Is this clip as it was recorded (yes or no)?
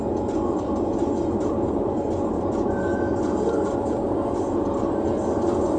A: yes